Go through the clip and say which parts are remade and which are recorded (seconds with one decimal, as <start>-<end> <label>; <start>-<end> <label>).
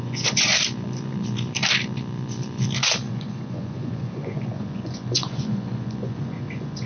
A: 0.0-0.5 remade; 0.5-3.1 recorded; 3.1-6.9 remade